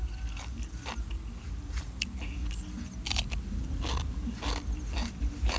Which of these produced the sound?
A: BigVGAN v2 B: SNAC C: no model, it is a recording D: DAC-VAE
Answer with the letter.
C